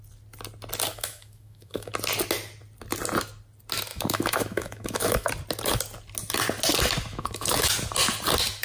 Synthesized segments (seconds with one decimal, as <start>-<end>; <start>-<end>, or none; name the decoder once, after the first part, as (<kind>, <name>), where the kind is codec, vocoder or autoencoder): 0.9-1.9 (autoencoder, DAC-VAE); 3.9-5.3; 7.1-7.7